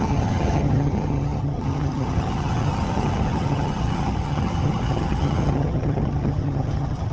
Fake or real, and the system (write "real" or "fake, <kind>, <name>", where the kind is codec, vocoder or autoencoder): fake, vocoder, HiFi-GAN